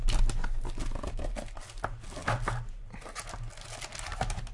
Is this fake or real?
real